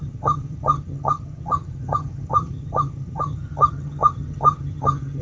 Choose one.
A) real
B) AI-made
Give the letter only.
B